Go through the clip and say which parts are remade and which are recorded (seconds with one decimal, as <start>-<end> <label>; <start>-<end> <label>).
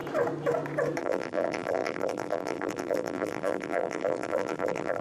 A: 0.0-1.0 recorded; 1.0-5.0 remade